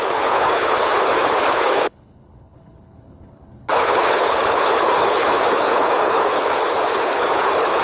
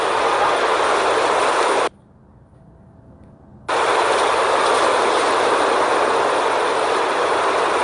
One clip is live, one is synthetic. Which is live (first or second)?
second